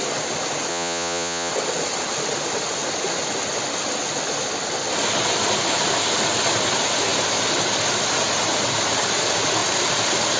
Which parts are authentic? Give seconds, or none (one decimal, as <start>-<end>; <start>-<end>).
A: 0.0-0.7; 1.5-10.4